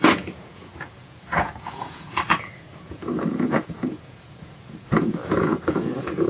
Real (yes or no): no